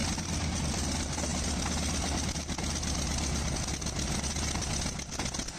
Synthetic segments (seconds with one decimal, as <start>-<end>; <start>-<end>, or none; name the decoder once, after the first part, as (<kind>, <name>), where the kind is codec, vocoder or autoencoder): none